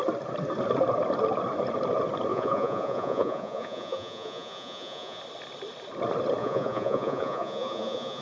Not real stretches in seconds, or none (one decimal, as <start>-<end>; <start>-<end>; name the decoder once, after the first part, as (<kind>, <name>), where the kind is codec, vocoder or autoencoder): 2.3-5.2 (vocoder, Vocos); 6.4-8.2